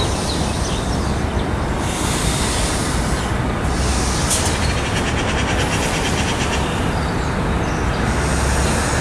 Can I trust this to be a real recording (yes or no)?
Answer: yes